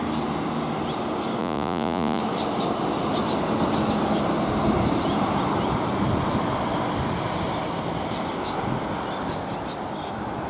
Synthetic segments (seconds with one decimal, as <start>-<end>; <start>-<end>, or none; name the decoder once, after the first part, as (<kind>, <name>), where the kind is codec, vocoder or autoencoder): 1.4-2.2 (vocoder, Vocos)